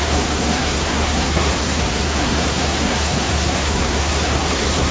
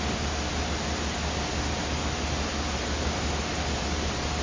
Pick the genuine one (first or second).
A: second